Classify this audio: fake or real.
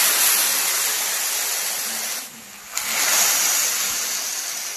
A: real